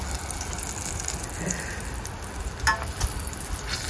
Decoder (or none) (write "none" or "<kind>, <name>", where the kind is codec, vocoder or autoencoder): none